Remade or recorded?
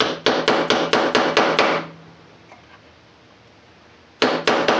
recorded